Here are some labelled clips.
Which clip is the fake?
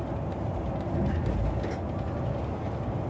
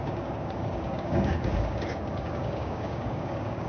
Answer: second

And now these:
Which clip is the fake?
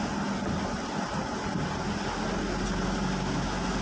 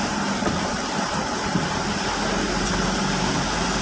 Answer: second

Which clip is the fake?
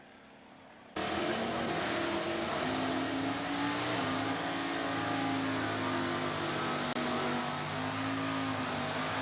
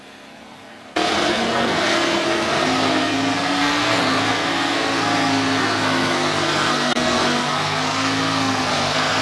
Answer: second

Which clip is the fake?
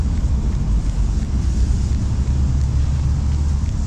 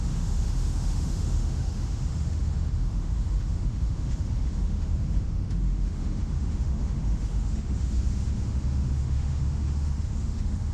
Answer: second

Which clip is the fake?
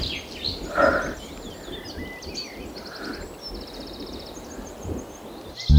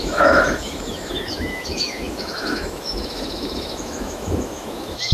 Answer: second